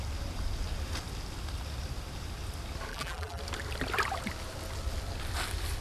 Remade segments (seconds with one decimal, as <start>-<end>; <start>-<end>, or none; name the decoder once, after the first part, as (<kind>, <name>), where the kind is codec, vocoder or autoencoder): 2.9-3.4 (vocoder, BigVGAN v2)

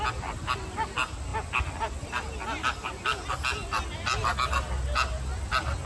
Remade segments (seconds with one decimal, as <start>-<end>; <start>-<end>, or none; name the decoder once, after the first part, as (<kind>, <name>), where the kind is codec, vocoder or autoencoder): none

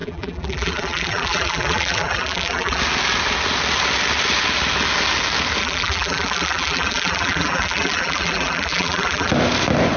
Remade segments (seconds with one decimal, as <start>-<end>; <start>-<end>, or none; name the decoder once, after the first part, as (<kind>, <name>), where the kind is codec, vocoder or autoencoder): 0.0-2.8 (vocoder, BigVGAN v2); 5.6-9.3

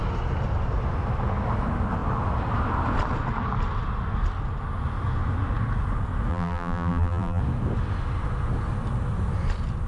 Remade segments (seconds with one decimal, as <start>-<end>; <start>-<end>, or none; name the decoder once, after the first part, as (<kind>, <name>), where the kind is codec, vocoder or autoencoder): 6.3-7.4 (vocoder, BigVGAN v2)

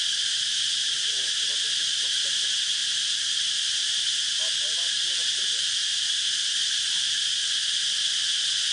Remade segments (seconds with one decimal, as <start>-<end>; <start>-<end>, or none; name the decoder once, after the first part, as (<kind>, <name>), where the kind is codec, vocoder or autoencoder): 0.0-2.4 (vocoder, BigVGAN v2); 2.8-3.7; 5.8-6.9